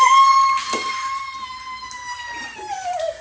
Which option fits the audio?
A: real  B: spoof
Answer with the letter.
A